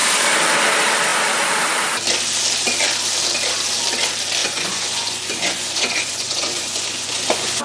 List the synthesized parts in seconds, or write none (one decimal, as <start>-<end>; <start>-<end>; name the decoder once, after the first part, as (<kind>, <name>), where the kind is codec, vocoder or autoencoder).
4.4-7.6 (vocoder, Vocos)